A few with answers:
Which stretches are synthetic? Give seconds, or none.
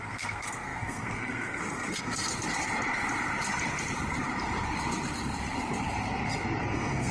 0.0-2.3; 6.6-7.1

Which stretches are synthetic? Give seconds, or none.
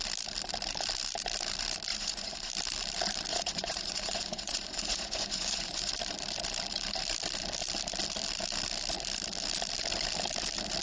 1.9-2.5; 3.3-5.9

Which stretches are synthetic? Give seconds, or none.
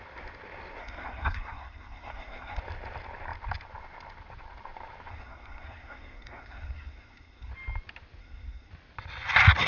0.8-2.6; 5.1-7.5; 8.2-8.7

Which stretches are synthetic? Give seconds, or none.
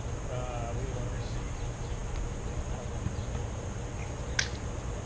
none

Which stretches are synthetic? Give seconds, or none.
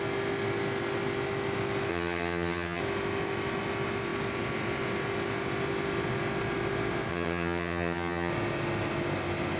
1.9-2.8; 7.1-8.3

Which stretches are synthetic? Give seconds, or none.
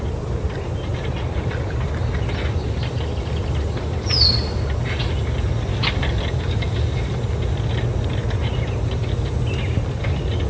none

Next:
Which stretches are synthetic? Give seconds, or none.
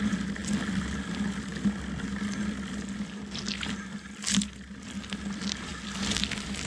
none